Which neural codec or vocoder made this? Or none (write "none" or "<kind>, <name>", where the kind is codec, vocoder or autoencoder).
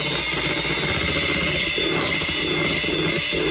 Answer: none